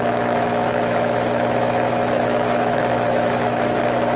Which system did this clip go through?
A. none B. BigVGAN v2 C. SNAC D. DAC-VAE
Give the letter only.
D